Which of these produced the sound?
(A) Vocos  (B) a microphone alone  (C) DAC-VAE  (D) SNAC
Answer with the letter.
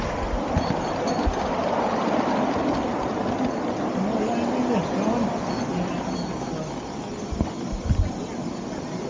B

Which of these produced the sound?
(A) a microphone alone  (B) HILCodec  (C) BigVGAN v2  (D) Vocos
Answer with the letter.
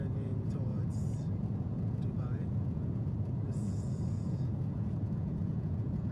D